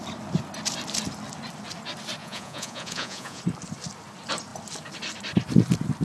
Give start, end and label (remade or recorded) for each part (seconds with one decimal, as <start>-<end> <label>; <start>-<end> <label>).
0.0-2.2 recorded; 2.2-3.4 remade; 3.4-6.0 recorded